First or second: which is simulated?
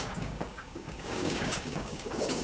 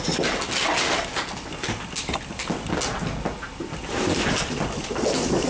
first